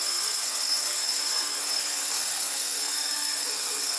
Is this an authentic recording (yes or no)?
no